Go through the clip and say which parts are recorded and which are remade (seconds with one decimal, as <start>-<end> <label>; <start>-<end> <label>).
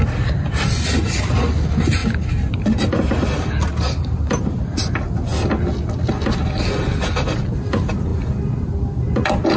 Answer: 0.0-9.6 recorded